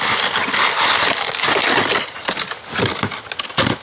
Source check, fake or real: real